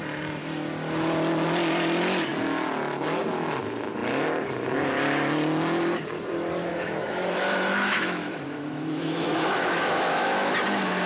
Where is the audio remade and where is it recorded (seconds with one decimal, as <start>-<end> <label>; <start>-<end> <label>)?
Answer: 0.0-6.7 recorded; 6.7-10.5 remade; 10.5-11.1 recorded